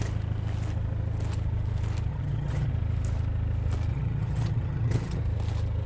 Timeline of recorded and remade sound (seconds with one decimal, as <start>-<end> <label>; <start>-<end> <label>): 0.0-2.1 recorded; 2.1-2.7 remade; 2.7-3.9 recorded; 3.9-5.2 remade; 5.2-5.9 recorded